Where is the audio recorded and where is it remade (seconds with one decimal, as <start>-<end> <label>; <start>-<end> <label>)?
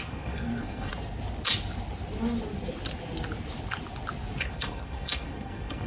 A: 0.0-0.9 remade; 0.9-4.4 recorded; 4.4-5.9 remade